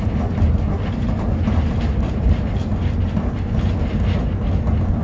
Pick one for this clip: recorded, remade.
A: recorded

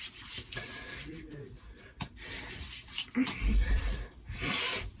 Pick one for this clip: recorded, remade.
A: remade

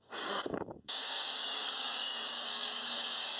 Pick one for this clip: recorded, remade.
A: remade